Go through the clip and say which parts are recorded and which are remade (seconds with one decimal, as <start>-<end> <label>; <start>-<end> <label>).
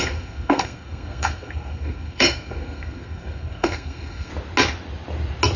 0.0-4.3 remade; 4.3-5.6 recorded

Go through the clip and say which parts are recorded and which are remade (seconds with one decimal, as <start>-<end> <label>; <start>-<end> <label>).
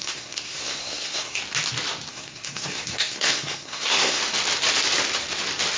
0.0-1.4 remade; 1.4-2.1 recorded; 2.1-4.2 remade; 4.2-5.8 recorded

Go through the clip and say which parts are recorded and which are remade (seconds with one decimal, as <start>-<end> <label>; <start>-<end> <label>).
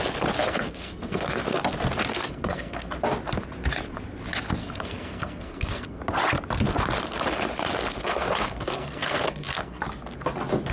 0.0-0.4 recorded; 0.4-1.6 remade; 1.6-2.1 recorded; 2.1-3.0 remade; 3.0-4.6 recorded; 4.6-6.0 remade; 6.0-8.0 recorded; 8.0-9.8 remade; 9.8-10.7 recorded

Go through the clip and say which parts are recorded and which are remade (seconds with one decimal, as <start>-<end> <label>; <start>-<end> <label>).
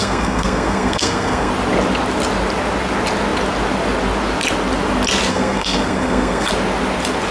0.0-1.5 remade; 1.5-5.3 recorded; 5.3-6.5 remade; 6.5-7.3 recorded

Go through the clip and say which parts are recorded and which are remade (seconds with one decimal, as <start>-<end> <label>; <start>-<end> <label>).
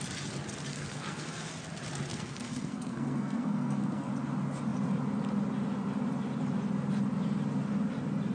0.0-0.7 recorded; 0.7-1.5 remade; 1.5-2.1 recorded; 2.1-4.1 remade; 4.1-8.3 recorded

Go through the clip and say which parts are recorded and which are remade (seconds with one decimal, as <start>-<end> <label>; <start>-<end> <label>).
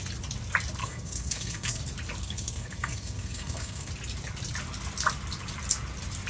0.0-0.8 recorded; 0.8-1.8 remade; 1.8-2.2 recorded; 2.2-3.9 remade; 3.9-6.3 recorded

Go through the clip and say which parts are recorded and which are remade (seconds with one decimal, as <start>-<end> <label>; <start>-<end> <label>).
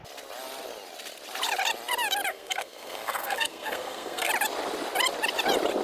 0.0-2.3 recorded; 2.3-4.3 remade; 4.3-5.8 recorded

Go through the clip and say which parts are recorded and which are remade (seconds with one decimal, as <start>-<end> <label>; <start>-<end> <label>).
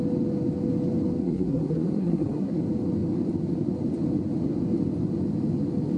0.0-1.2 recorded; 1.2-2.6 remade; 2.6-6.0 recorded